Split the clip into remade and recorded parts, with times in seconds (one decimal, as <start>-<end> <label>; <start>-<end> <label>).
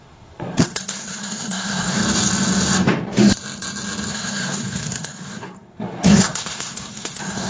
0.0-2.0 remade; 2.0-4.1 recorded; 4.1-7.5 remade